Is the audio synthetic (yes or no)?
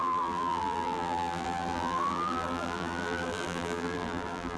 yes